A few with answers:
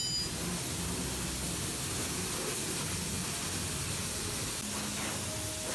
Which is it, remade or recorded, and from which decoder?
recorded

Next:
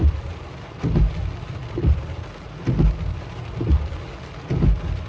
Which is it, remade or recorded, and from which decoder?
recorded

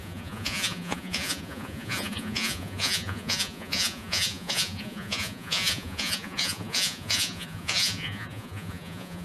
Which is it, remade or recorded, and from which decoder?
remade, vocoder, Vocos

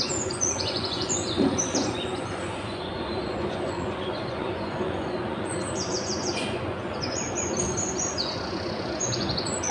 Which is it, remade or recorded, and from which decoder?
remade, vocoder, Vocos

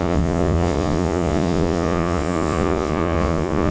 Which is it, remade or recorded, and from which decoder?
remade, vocoder, Vocos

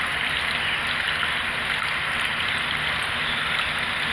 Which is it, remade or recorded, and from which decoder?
recorded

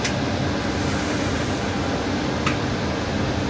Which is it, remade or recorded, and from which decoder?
recorded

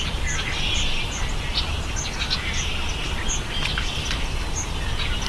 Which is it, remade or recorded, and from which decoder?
recorded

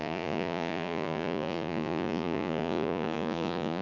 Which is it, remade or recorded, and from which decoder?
remade, vocoder, Vocos